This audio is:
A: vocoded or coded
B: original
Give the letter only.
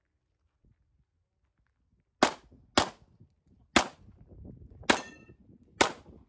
B